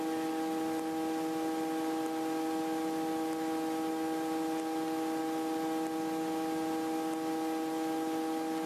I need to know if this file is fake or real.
real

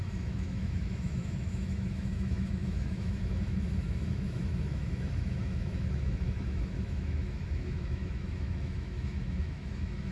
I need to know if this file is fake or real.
fake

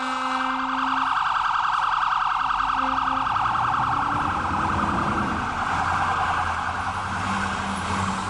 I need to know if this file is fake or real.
real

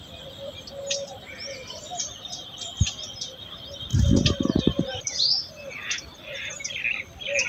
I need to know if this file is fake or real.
real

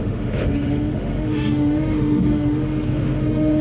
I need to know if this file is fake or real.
fake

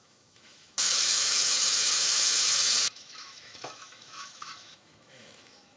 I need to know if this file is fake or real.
fake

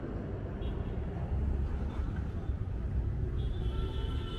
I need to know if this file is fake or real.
real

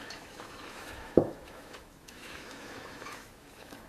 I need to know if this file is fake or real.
fake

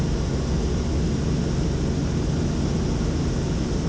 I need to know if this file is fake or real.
real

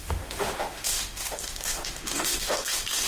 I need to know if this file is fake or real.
fake